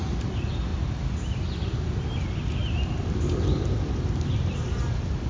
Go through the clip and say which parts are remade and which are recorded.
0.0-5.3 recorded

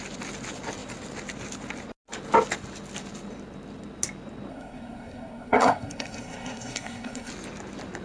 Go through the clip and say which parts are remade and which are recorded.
0.0-4.5 recorded; 4.5-7.3 remade; 7.3-8.0 recorded

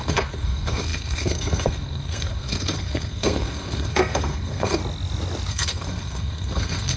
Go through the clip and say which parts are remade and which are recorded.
0.0-4.8 remade; 4.8-5.5 recorded; 5.5-7.0 remade

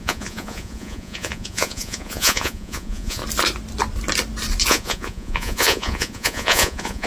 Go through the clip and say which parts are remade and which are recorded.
0.0-3.2 remade; 3.2-4.7 recorded; 4.7-7.1 remade

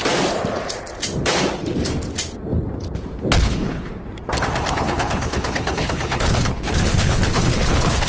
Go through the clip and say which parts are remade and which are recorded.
0.0-3.4 recorded; 3.4-3.9 remade; 3.9-4.7 recorded; 4.7-8.1 remade